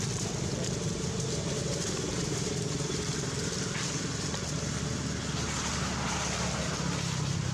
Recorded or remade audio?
recorded